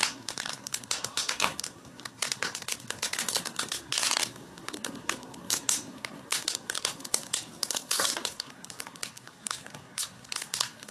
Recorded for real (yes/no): no